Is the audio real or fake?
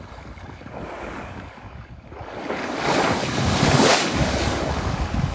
fake